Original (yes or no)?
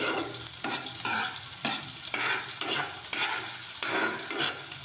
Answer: yes